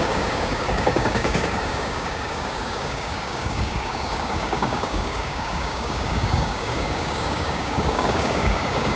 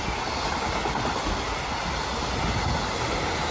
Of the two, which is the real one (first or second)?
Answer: second